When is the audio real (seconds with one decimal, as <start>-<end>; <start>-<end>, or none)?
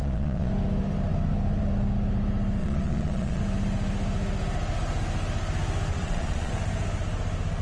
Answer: 0.5-2.6; 3.4-5.9; 6.5-7.6